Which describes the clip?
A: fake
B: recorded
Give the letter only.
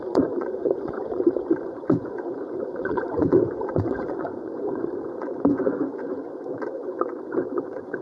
A